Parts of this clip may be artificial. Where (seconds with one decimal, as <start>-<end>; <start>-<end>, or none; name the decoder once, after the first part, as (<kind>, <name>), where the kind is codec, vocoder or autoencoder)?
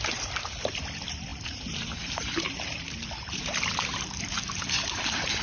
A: 0.0-5.4 (vocoder, BigVGAN v2)